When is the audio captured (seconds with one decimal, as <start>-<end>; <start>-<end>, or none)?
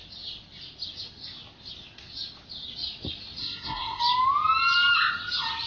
0.0-3.4; 4.0-5.7